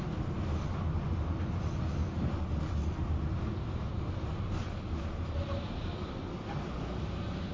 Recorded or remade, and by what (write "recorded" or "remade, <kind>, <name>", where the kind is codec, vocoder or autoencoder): recorded